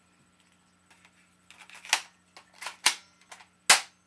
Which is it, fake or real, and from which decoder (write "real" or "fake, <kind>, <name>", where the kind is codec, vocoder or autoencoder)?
real